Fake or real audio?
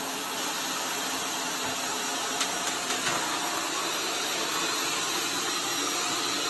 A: real